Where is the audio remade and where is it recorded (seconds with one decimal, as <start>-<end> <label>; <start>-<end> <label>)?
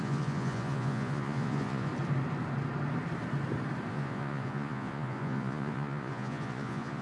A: 0.0-1.9 remade; 1.9-3.9 recorded; 3.9-7.0 remade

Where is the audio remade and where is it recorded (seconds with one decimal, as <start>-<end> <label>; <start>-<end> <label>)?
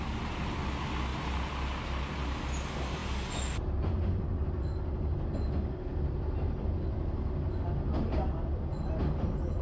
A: 0.0-9.6 recorded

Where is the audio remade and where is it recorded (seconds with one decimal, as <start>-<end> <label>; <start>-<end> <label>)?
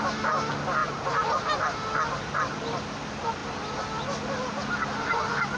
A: 0.0-0.8 recorded; 0.8-1.6 remade; 1.6-5.6 recorded